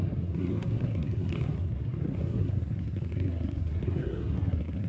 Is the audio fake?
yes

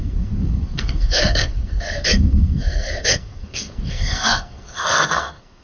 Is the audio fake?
yes